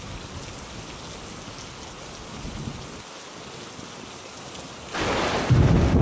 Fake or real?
real